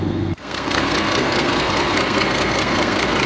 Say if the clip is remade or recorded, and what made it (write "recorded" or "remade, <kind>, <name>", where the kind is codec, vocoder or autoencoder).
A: remade, codec, SNAC